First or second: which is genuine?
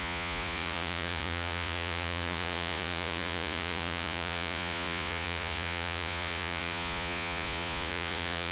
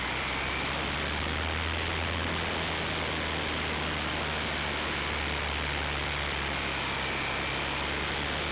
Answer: second